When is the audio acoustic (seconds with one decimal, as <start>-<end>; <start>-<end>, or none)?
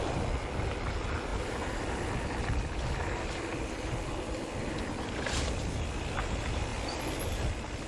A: 0.0-1.3; 5.6-7.9